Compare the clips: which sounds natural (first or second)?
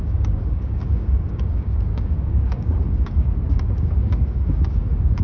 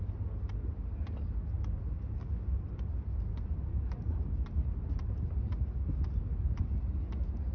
second